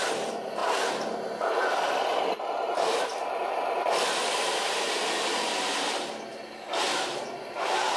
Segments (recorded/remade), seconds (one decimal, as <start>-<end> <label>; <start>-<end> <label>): 0.0-0.6 recorded; 0.6-2.0 remade; 2.0-3.1 recorded; 3.1-7.2 remade; 7.2-8.0 recorded